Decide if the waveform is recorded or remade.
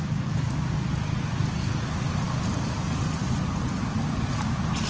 recorded